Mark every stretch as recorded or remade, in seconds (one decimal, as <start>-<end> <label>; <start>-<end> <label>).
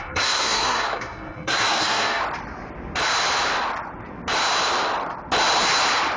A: 0.0-2.2 remade; 2.2-6.2 recorded